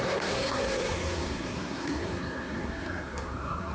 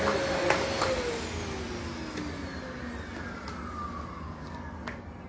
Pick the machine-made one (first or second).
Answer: first